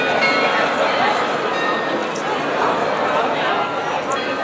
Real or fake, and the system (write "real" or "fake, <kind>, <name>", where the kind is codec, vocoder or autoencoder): real